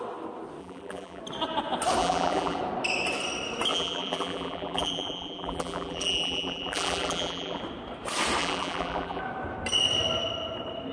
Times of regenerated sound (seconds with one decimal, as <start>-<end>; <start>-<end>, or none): 0.6-1.2; 2.0-2.6; 3.7-7.6; 8.4-9.2